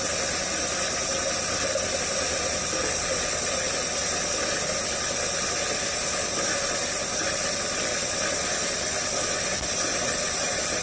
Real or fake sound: real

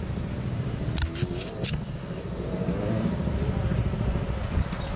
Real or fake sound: real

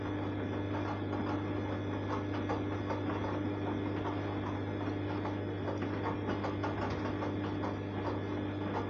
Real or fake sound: real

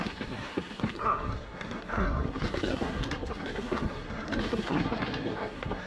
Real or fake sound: fake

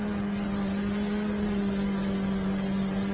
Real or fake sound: real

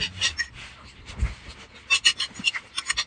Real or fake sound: real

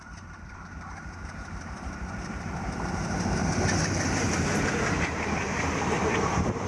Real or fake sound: fake